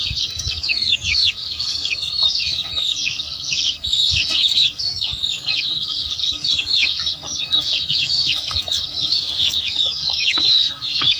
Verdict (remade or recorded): remade